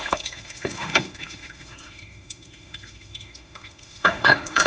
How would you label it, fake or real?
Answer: fake